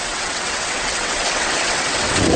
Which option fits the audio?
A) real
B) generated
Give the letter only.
B